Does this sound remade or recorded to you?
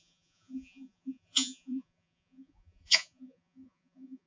remade